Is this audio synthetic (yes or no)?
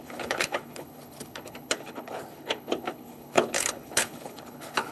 yes